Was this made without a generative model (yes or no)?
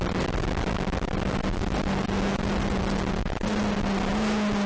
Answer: yes